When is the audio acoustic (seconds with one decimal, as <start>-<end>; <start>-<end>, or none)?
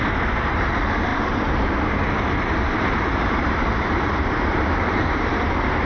none